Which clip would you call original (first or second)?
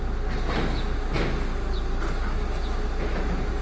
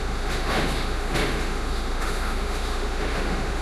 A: first